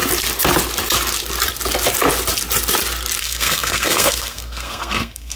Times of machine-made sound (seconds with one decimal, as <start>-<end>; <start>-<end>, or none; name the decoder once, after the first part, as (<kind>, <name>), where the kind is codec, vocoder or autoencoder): 3.2-5.4 (codec, SNAC)